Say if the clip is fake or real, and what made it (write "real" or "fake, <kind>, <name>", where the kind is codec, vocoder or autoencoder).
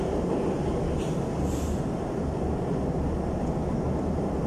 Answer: real